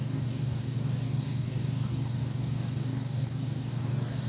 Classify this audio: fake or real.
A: fake